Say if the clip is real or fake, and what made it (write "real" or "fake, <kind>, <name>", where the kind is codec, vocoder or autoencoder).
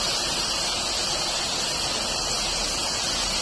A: real